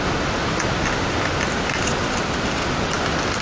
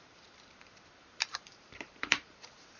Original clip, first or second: first